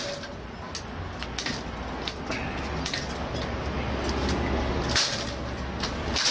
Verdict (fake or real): real